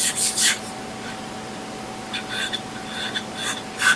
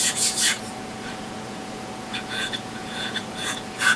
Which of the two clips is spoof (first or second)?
second